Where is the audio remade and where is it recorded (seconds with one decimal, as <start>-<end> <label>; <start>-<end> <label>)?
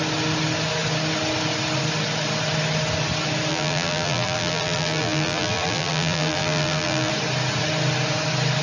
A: 0.0-3.5 recorded; 3.5-7.1 remade; 7.1-8.6 recorded